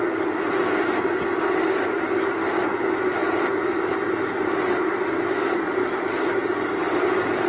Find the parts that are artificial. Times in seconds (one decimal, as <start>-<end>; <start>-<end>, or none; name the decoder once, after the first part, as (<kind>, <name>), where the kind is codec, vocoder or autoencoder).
none